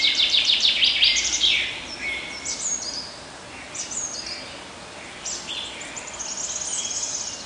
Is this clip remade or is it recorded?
recorded